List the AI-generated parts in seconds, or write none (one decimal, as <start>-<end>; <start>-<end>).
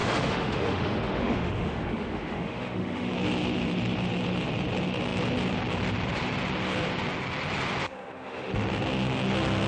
0.0-3.1; 7.9-8.5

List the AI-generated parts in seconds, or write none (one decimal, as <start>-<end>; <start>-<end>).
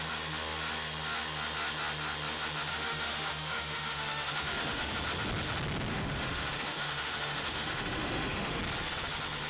2.7-4.9; 5.9-8.6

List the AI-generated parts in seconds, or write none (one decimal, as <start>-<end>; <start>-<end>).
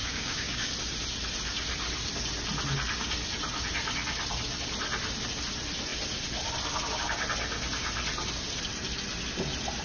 0.0-0.7